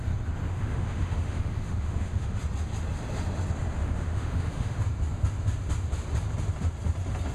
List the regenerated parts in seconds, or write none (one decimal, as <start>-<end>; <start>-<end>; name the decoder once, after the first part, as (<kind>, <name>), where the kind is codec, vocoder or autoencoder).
0.5-2.4 (autoencoder, DAC-VAE); 3.8-4.8

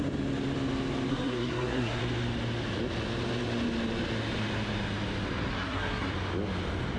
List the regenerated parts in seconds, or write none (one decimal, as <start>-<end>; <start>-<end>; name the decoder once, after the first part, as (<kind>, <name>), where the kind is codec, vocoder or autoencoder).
1.1-2.0 (codec, SNAC); 5.5-6.1

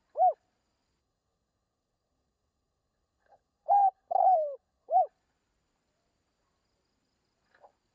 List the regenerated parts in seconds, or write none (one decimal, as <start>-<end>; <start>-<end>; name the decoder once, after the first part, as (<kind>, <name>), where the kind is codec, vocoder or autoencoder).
1.0-5.1 (codec, HILCodec)

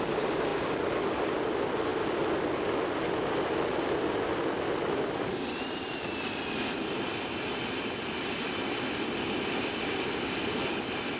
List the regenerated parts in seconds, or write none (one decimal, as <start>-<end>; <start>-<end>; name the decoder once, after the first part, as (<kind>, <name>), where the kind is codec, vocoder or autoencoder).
none

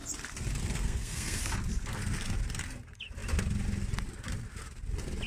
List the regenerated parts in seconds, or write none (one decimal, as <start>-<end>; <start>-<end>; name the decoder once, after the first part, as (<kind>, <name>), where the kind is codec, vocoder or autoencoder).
0.7-1.4 (codec, SNAC)

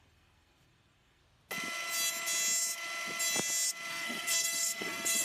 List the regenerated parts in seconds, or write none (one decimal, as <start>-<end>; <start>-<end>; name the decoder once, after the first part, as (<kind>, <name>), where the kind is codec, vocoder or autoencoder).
0.0-1.2 (codec, SNAC); 3.9-5.2